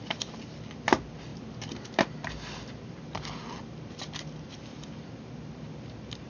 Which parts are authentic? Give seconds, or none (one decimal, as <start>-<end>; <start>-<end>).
0.0-6.3